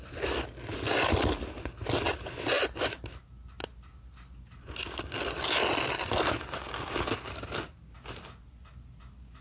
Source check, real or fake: real